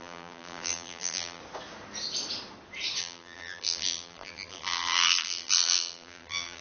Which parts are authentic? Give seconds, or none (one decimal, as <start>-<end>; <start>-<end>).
1.4-3.0